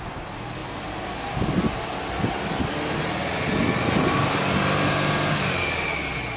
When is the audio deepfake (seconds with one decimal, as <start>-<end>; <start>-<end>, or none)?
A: none